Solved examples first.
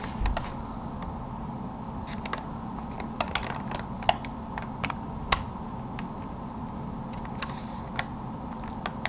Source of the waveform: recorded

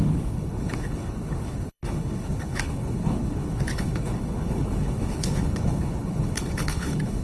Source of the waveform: remade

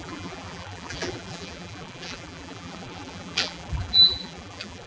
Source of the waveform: remade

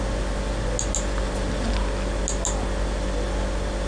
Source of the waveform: recorded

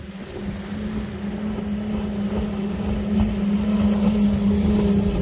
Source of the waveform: recorded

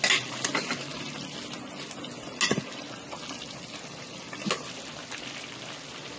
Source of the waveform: recorded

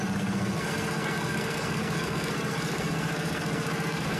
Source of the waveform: remade